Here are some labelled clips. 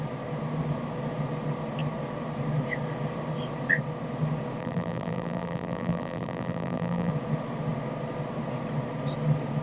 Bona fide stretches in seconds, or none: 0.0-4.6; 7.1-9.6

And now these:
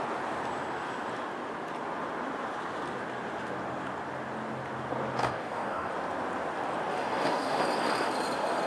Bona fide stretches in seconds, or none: 0.0-5.2; 5.9-6.9; 7.6-8.7

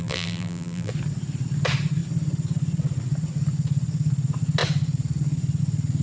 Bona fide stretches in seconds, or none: 0.9-6.0

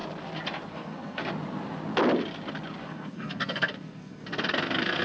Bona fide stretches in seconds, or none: 0.0-0.7; 1.2-2.8

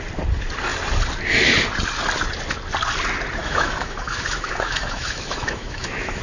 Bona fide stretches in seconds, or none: 0.0-3.4

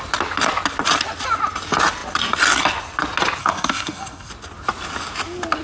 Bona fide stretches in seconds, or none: 0.0-3.4; 4.3-5.6

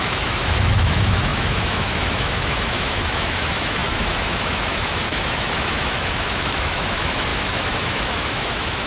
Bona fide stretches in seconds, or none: none